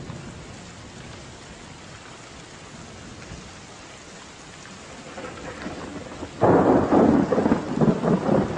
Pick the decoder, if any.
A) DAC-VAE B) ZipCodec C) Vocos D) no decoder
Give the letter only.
D